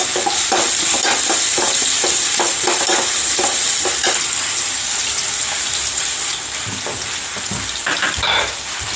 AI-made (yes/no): no